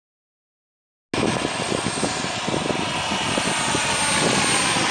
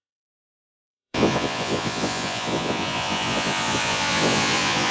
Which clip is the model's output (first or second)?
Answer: second